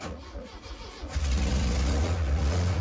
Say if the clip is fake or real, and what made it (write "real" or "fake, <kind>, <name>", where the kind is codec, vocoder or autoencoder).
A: fake, vocoder, Vocos